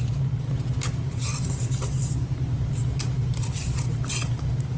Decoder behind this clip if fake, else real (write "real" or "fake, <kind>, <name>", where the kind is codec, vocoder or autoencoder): real